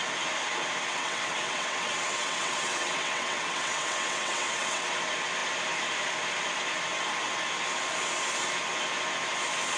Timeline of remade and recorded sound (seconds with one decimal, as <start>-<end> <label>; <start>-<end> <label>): 0.0-0.9 recorded; 0.9-5.0 remade; 5.0-9.8 recorded